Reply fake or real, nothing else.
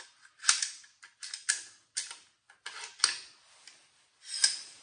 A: real